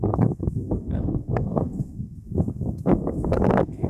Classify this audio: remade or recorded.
remade